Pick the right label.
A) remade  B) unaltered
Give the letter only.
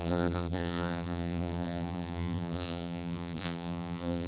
A